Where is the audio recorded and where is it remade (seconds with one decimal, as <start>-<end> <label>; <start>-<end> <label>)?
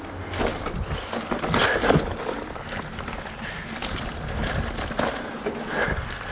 0.0-6.3 recorded